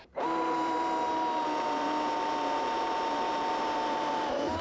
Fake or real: real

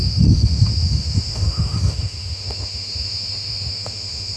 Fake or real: fake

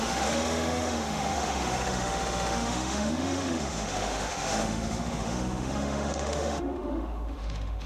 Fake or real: fake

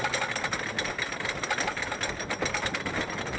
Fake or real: real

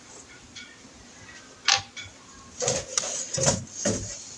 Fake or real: real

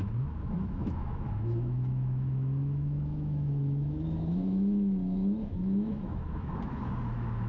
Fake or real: fake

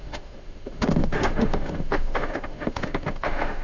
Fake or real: fake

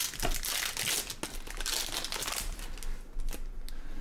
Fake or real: real